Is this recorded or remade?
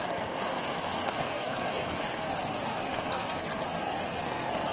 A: remade